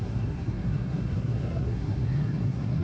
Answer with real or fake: fake